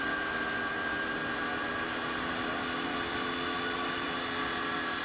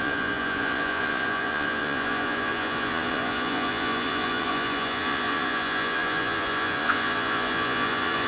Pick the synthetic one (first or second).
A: second